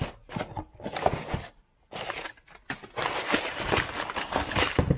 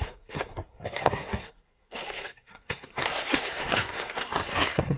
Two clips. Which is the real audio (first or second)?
first